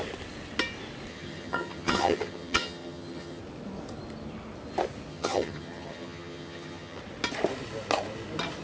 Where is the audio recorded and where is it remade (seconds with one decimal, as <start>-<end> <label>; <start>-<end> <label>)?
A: 0.0-1.1 recorded; 1.1-3.4 remade; 3.4-5.1 recorded; 5.1-7.0 remade; 7.0-8.6 recorded